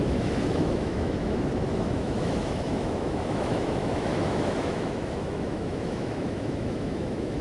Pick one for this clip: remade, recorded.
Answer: remade